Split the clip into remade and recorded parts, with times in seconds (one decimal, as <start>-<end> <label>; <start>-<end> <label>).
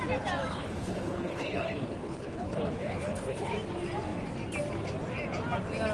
0.0-0.5 recorded; 0.5-3.5 remade; 3.5-5.9 recorded